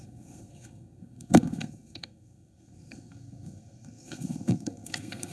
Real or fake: fake